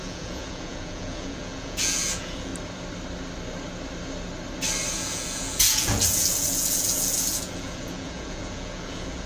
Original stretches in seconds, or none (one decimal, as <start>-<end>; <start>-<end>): 2.5-4.9